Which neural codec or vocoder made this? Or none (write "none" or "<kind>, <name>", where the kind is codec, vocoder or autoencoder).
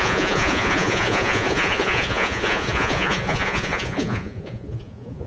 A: vocoder, Vocos